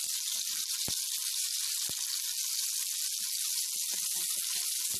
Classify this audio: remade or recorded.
recorded